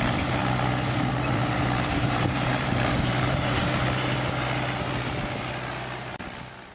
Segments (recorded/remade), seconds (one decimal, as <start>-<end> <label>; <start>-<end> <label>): 0.0-1.9 recorded; 1.9-3.6 remade; 3.6-6.7 recorded